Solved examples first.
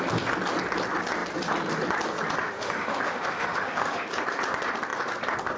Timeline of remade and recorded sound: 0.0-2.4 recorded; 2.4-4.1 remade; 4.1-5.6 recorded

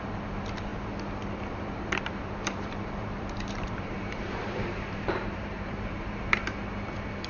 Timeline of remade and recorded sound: 0.0-0.7 remade; 0.7-1.5 recorded; 1.5-6.4 remade; 6.4-7.3 recorded

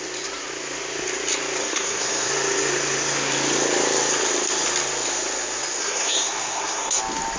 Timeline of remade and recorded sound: 0.0-1.6 recorded; 1.6-2.3 remade; 2.3-5.8 recorded; 5.8-7.0 remade; 7.0-7.4 recorded

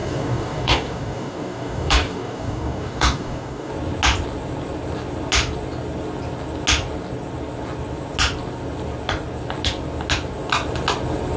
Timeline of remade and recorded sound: 0.0-3.7 remade; 3.7-11.4 recorded

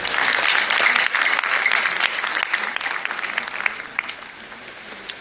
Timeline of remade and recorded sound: 0.0-2.3 recorded; 2.3-2.9 remade; 2.9-3.9 recorded; 3.9-5.2 remade

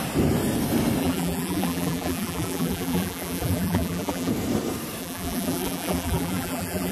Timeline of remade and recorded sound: 0.0-1.0 recorded; 1.0-4.3 remade; 4.3-5.0 recorded; 5.0-6.9 remade

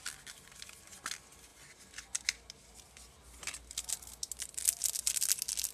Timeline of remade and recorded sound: 0.0-5.7 recorded

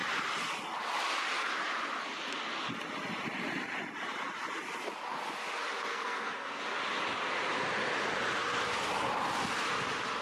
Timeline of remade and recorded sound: 0.0-5.9 recorded; 5.9-6.6 remade; 6.6-10.2 recorded